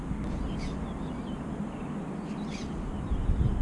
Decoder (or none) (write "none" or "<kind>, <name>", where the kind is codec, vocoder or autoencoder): none